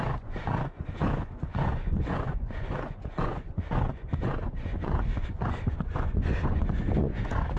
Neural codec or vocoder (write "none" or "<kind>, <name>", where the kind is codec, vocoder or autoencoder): vocoder, Vocos